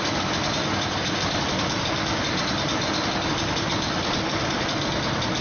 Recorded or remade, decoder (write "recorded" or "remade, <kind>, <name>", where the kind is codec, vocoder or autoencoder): recorded